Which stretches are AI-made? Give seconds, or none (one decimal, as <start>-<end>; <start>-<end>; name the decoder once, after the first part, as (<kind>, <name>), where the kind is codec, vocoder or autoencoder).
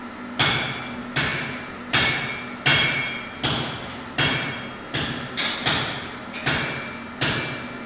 1.3-2.3 (vocoder, BigVGAN v2); 2.7-4.6